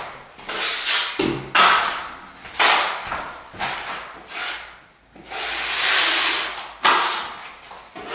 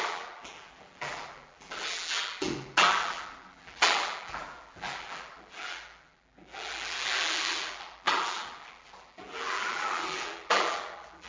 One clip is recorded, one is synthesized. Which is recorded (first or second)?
first